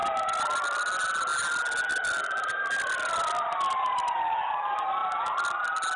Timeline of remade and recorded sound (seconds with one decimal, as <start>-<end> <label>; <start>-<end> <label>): 0.0-6.0 recorded